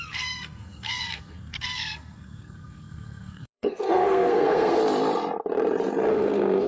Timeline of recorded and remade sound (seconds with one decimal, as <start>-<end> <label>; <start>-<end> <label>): 0.0-4.8 remade; 4.8-6.1 recorded; 6.1-6.7 remade